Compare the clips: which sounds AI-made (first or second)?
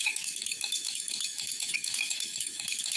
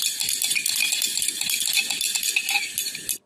first